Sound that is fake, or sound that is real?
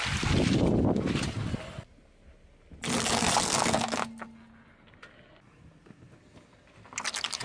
real